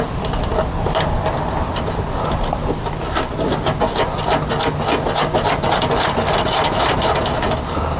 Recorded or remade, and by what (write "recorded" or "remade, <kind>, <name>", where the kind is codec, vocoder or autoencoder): recorded